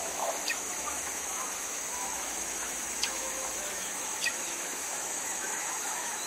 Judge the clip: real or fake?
fake